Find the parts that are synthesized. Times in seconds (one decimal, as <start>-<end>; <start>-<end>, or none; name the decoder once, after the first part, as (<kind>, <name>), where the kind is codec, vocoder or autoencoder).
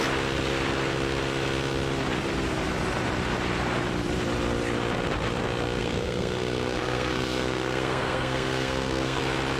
5.8-9.2 (codec, SNAC)